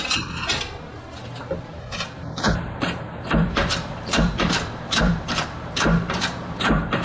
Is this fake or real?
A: fake